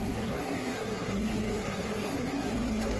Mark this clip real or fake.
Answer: fake